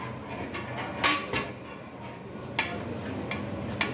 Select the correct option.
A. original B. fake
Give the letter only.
A